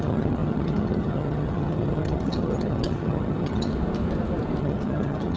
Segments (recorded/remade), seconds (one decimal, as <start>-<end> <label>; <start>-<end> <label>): 0.0-3.7 remade; 3.7-4.6 recorded; 4.6-5.4 remade